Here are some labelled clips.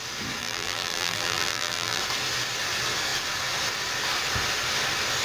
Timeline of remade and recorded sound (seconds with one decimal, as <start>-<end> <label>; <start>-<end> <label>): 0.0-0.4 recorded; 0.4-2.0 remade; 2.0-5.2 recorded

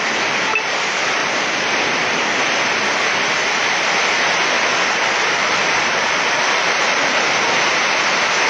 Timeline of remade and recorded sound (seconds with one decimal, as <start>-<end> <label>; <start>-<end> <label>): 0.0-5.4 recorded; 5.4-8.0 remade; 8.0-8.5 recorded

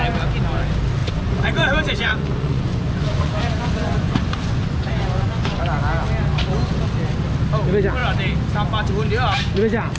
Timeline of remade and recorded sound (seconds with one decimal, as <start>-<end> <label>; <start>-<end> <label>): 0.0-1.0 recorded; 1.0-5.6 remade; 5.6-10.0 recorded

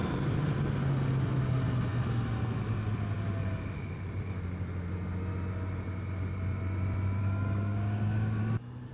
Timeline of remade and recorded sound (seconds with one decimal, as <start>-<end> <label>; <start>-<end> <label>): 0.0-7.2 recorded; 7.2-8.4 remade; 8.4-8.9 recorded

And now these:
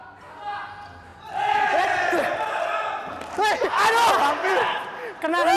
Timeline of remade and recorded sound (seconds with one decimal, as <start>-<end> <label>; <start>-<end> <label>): 0.0-5.6 recorded